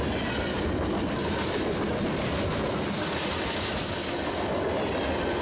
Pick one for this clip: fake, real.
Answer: real